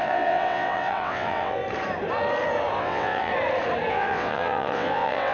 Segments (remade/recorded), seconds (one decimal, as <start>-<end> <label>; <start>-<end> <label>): 0.0-1.6 remade; 1.6-2.8 recorded; 2.8-3.3 remade; 3.3-3.9 recorded; 3.9-5.3 remade